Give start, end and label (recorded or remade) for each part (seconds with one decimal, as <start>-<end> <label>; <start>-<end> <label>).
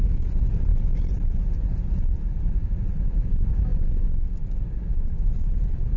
0.0-0.7 recorded; 0.7-2.4 remade; 2.4-6.0 recorded